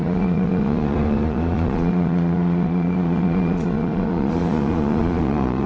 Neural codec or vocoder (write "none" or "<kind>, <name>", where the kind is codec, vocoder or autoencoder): vocoder, Vocos